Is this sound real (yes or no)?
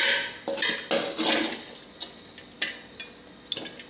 yes